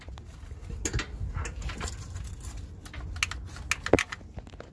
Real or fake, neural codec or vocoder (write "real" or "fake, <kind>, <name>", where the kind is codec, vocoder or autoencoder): real